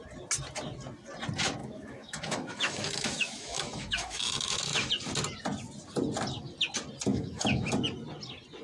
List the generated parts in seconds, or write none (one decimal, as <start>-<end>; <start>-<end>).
1.6-4.9; 7.1-7.7